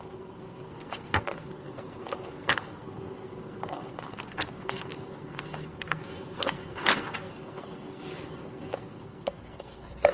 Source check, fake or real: fake